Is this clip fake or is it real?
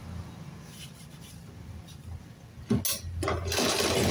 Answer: real